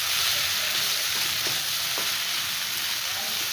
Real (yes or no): yes